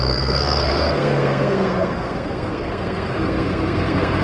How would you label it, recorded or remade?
remade